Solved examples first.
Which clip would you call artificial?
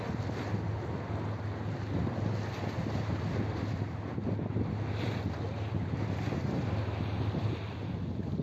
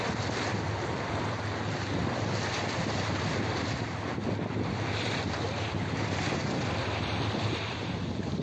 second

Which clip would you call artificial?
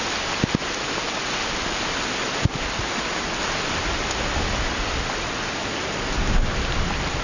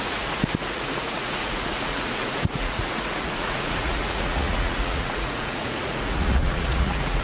second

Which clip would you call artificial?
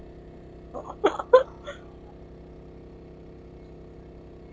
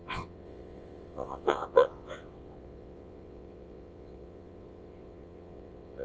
second